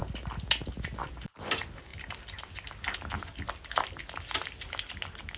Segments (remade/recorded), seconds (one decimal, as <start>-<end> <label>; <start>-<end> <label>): 0.0-5.4 recorded